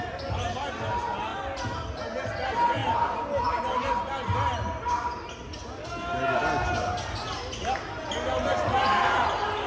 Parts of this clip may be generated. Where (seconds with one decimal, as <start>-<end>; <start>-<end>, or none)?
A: none

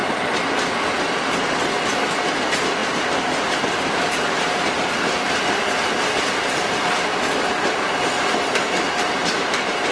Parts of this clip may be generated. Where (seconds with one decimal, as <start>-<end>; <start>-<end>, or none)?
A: none

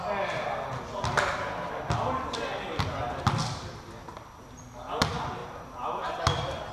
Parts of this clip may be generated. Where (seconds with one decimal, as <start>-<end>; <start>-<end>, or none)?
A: none

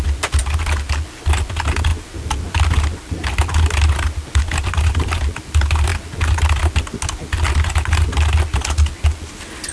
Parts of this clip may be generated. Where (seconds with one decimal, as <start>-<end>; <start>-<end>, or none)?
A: none

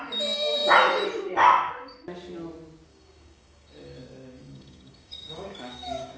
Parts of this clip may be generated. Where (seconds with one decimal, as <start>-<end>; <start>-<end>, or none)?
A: 2.9-6.2